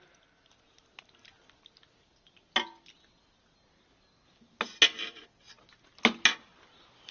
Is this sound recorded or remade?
recorded